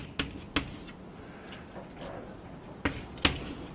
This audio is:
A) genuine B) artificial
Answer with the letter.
A